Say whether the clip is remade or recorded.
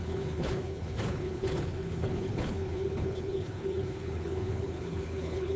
remade